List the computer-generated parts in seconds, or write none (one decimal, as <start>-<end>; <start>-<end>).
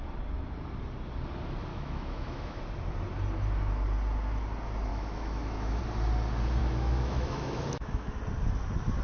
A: 1.7-2.6; 4.9-5.8; 6.6-8.2